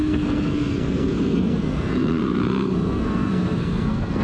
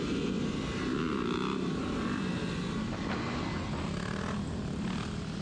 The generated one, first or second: first